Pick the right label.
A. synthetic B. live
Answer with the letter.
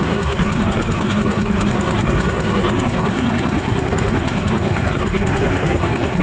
A